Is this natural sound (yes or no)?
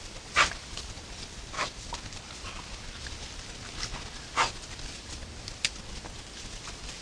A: yes